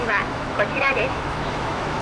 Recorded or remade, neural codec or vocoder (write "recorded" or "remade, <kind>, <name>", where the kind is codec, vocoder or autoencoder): remade, autoencoder, DAC-VAE